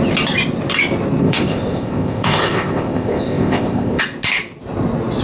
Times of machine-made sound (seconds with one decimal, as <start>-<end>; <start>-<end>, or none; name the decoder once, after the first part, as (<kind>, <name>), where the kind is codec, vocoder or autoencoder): 1.2-4.0 (codec, ZipCodec)